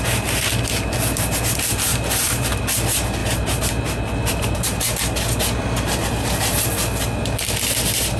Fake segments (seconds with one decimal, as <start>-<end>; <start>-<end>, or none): 1.9-2.6